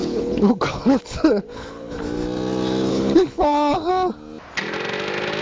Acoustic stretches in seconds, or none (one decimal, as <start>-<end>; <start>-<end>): 2.0-2.9; 3.9-5.4